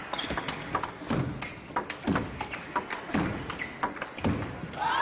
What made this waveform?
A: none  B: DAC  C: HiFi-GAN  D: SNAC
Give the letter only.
A